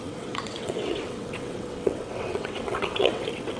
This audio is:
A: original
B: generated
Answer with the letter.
B